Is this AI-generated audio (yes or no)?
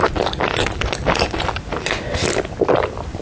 no